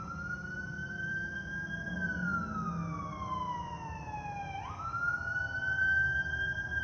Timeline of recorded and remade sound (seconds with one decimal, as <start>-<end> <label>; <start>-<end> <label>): 0.0-0.8 recorded; 0.8-1.5 remade; 1.5-6.8 recorded